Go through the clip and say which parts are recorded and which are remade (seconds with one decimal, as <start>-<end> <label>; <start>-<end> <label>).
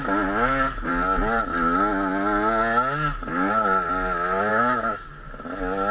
0.0-4.5 recorded; 4.5-5.1 remade; 5.1-5.9 recorded